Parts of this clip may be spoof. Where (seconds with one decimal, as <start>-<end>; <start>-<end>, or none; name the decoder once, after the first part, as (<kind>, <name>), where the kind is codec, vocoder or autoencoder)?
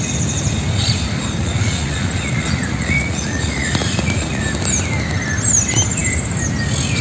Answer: 1.4-4.4 (vocoder, Vocos)